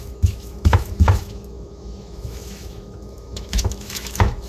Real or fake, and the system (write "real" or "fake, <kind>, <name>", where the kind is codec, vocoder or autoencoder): fake, autoencoder, DAC-VAE